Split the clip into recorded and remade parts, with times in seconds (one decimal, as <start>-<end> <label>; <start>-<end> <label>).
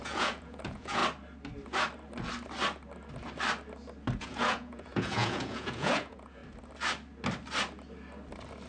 0.0-1.0 remade; 1.0-4.2 recorded; 4.2-6.4 remade; 6.4-8.7 recorded